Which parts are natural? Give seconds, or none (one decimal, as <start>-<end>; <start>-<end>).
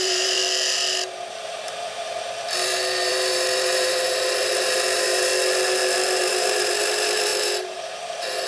0.4-1.3; 5.3-6.2